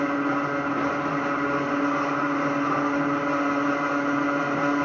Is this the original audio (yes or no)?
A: yes